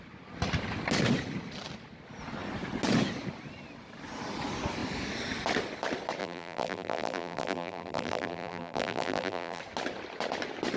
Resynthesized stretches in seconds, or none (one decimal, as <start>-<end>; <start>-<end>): 6.2-9.6